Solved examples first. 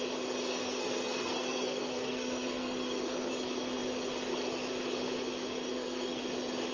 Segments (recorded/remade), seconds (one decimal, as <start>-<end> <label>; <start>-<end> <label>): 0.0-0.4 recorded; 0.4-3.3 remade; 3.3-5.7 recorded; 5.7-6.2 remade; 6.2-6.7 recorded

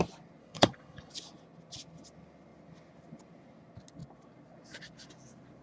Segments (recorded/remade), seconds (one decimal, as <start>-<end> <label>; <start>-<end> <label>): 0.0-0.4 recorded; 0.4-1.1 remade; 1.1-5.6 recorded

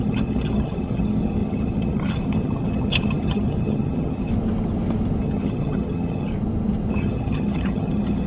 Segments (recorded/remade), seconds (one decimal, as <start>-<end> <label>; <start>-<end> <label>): 0.0-4.3 remade; 4.3-5.2 recorded; 5.2-6.3 remade; 6.3-6.9 recorded; 6.9-8.3 remade